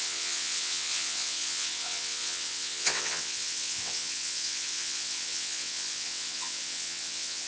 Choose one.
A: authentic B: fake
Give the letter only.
B